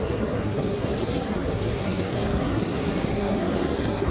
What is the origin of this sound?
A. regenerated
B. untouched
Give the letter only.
A